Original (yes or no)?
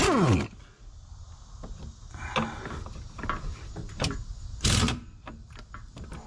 yes